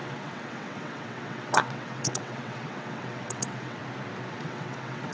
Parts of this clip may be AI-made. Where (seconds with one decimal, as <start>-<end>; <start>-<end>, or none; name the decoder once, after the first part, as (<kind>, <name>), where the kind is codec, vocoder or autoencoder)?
0.0-3.8 (vocoder, WaveNeXt); 4.3-5.1